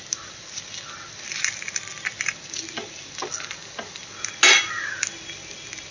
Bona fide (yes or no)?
yes